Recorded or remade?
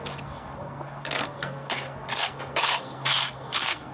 remade